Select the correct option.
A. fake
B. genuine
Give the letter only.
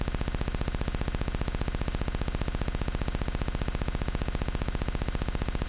B